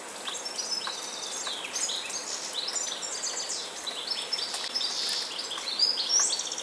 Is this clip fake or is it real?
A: real